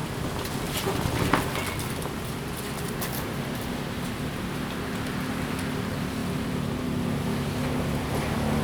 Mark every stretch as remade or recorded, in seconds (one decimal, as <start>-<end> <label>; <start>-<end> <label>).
0.0-8.6 recorded